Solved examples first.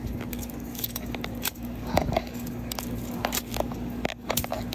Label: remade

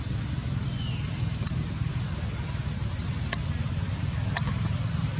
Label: recorded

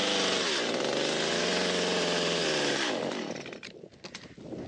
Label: recorded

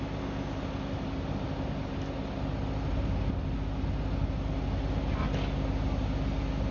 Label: recorded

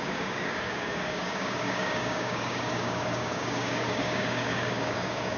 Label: remade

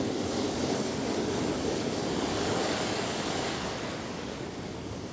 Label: remade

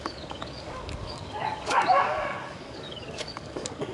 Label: remade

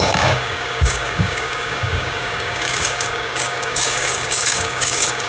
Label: remade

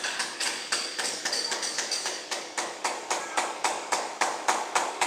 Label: remade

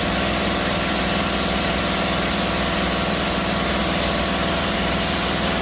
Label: recorded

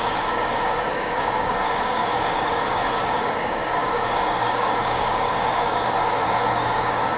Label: remade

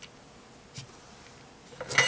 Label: recorded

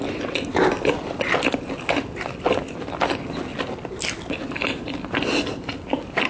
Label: recorded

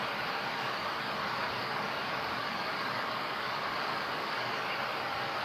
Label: remade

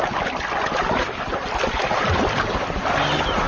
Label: recorded